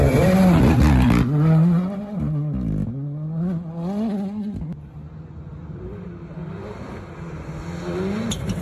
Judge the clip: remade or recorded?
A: recorded